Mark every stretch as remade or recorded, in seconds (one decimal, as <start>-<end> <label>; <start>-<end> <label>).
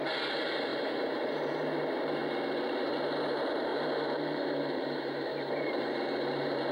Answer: 0.0-0.7 recorded; 0.7-1.5 remade; 1.5-3.7 recorded; 3.7-6.7 remade